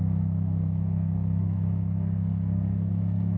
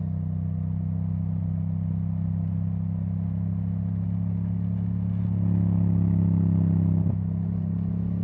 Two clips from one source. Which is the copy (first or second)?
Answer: first